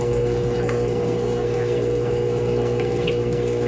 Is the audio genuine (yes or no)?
no